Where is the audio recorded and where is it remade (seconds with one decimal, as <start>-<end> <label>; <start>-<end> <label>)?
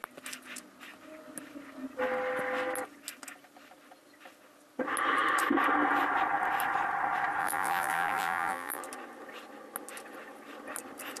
0.0-7.4 recorded; 7.4-8.8 remade; 8.8-11.2 recorded